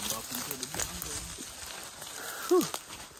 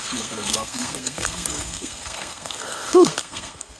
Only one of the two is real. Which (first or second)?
first